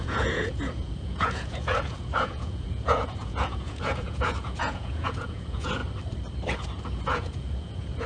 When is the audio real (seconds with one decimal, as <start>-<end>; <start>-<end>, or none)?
5.8-6.8